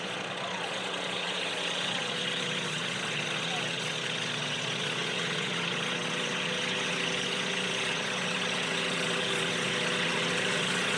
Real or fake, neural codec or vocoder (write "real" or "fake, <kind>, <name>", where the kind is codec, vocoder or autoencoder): fake, vocoder, Vocos